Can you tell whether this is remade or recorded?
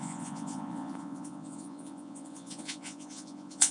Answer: remade